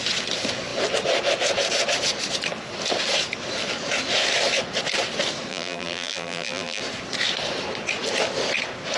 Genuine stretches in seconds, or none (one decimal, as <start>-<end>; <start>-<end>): 0.0-5.5; 6.8-9.0